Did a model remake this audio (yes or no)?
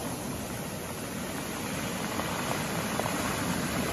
no